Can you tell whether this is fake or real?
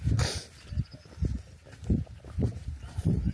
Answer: fake